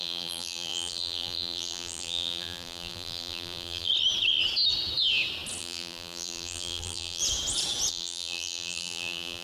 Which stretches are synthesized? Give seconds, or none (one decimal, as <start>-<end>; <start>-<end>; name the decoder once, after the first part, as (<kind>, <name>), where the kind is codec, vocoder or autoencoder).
0.0-3.9 (vocoder, BigVGAN v2); 5.6-7.2; 7.9-9.4